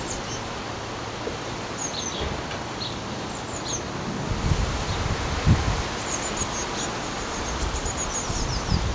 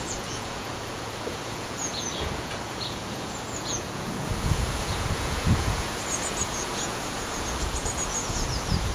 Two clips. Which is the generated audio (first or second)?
second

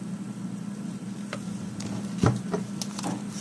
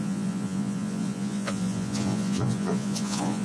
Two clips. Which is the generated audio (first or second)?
second